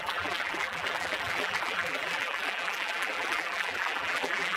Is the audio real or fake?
fake